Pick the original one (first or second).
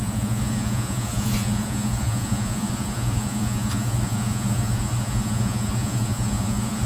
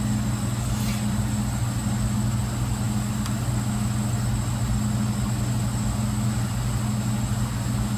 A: second